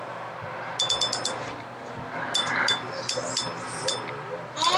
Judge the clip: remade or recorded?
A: recorded